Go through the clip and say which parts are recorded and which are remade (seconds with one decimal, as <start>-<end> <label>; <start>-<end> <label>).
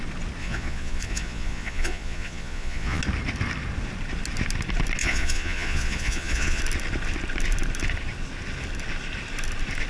0.0-0.4 recorded; 0.4-3.0 remade; 3.0-5.0 recorded; 5.0-6.6 remade; 6.6-9.9 recorded